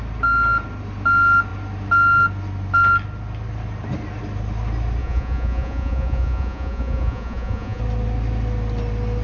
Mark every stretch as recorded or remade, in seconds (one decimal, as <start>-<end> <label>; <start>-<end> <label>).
0.0-5.0 recorded; 5.0-7.8 remade; 7.8-9.2 recorded